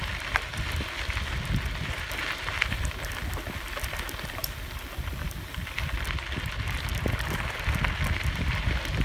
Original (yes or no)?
yes